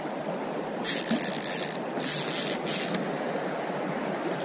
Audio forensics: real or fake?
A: real